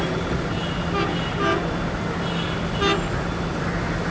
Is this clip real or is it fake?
real